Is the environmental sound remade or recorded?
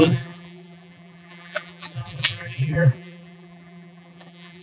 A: remade